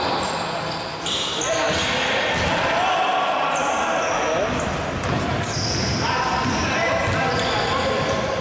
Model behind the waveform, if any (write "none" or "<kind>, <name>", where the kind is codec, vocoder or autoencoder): none